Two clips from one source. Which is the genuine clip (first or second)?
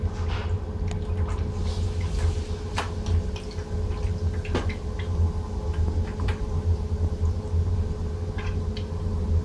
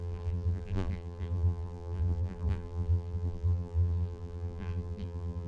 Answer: first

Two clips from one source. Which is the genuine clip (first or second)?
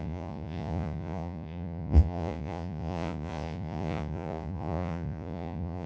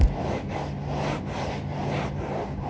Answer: second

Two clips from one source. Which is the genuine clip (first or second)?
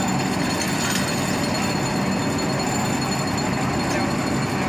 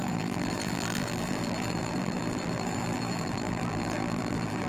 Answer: first